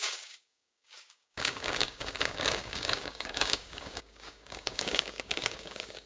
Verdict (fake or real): fake